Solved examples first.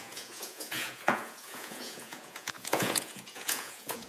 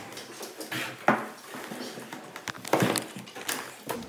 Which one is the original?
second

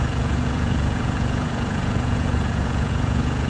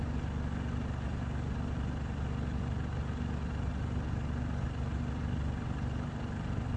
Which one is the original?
second